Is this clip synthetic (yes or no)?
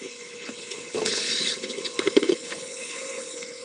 yes